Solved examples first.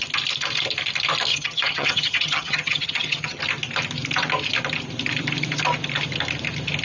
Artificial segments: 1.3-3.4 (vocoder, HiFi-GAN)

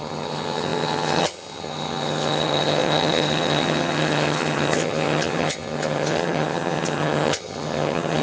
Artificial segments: 0.0-8.2 (vocoder, HiFi-GAN)

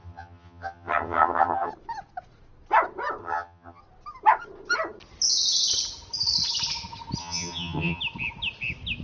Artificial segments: 0.0-1.7 (vocoder, HiFi-GAN); 3.2-3.8; 7.2-8.0

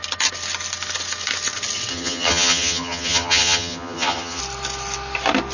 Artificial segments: 1.9-4.4 (vocoder, HiFi-GAN)

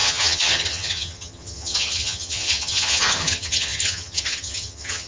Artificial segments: 0.0-5.1 (vocoder, HiFi-GAN)

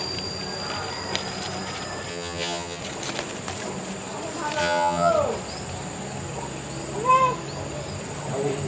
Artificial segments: 2.1-2.8 (vocoder, HiFi-GAN); 4.6-5.1

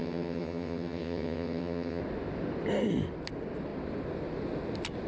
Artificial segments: 0.0-2.0 (vocoder, HiFi-GAN)

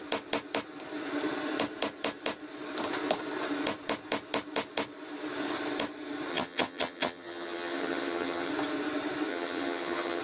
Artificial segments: 6.3-8.5 (vocoder, HiFi-GAN); 9.3-10.2